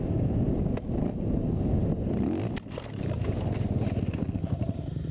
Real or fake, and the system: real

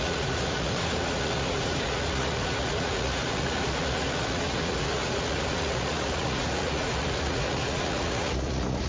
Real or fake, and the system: fake, vocoder, Vocos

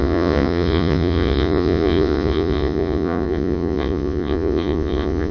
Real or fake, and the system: fake, vocoder, Vocos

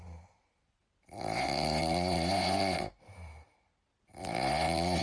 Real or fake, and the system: real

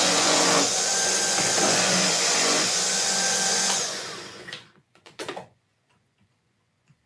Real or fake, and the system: fake, vocoder, Vocos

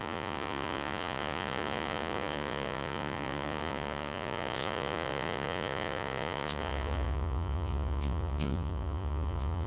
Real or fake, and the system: fake, vocoder, Vocos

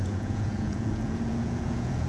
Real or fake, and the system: fake, vocoder, Vocos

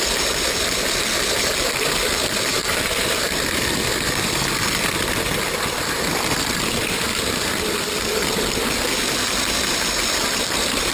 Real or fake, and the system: real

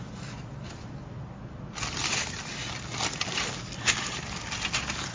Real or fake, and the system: real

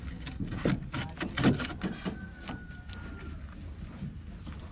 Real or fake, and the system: real